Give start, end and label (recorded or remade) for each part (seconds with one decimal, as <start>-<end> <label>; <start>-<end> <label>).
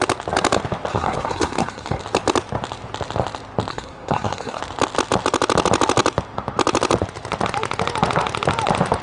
0.0-0.9 recorded; 0.9-2.0 remade; 2.0-3.7 recorded; 3.7-4.6 remade; 4.6-9.0 recorded